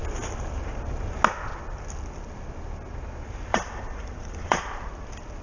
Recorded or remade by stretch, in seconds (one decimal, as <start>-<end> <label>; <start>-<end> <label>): 0.0-3.5 recorded; 3.5-4.9 remade; 4.9-5.4 recorded